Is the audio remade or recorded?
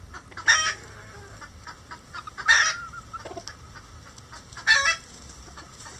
recorded